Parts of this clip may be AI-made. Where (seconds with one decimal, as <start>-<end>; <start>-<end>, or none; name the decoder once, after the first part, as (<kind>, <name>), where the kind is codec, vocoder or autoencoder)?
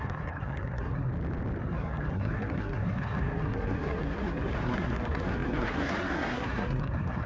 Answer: 0.0-1.1 (codec, SNAC); 1.6-7.3